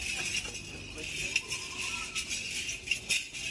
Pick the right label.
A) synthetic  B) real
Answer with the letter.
B